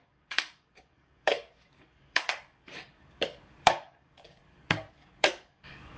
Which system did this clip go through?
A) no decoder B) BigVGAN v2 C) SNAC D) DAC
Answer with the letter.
D